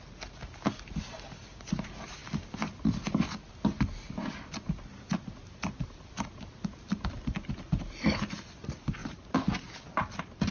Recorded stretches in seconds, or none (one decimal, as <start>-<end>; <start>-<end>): 0.0-10.5